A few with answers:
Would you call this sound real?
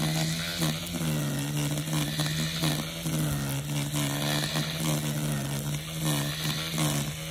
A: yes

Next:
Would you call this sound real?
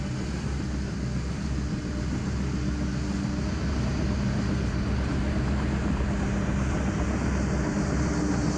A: yes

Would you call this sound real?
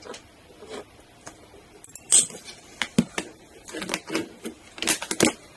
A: yes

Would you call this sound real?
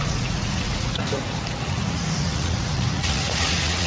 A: no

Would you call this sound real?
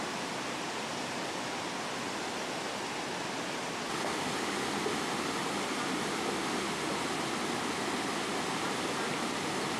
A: yes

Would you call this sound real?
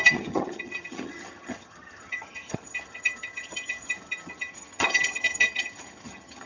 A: no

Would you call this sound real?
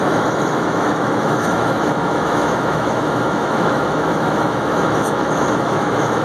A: no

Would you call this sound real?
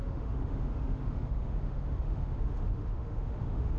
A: no